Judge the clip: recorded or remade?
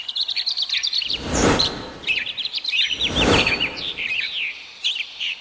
remade